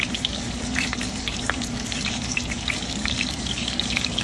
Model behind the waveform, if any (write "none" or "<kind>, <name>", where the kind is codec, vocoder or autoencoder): codec, DAC